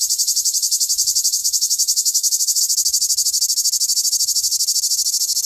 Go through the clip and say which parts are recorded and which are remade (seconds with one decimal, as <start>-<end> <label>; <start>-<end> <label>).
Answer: 0.0-1.4 recorded; 1.4-2.6 remade; 2.6-5.5 recorded